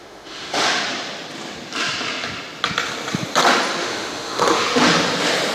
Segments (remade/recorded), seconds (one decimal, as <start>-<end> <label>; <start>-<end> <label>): 0.0-0.8 remade; 0.8-3.8 recorded; 3.8-4.8 remade; 4.8-5.5 recorded